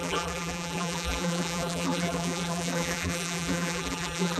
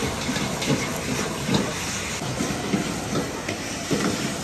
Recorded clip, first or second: second